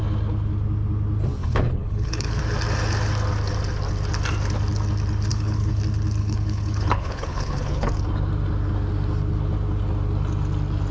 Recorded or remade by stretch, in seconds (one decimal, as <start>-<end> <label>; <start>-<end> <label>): 0.0-1.4 recorded; 1.4-2.4 remade; 2.4-5.3 recorded; 5.3-5.8 remade; 5.8-6.2 recorded; 6.2-7.9 remade; 7.9-10.9 recorded